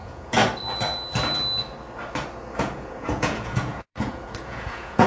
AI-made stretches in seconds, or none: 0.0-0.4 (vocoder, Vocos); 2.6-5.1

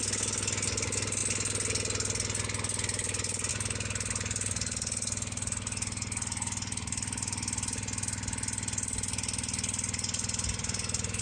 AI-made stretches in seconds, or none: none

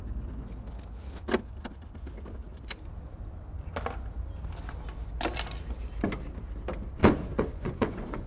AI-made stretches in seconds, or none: 7.0-8.3 (vocoder, Vocos)